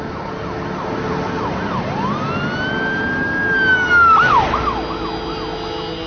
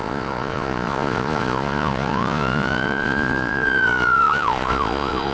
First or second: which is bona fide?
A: first